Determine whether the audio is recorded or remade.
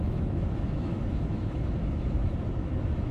remade